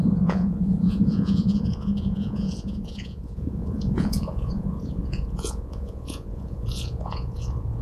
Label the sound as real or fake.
fake